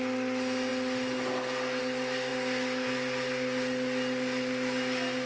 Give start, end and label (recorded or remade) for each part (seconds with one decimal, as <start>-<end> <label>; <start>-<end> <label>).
0.0-5.3 recorded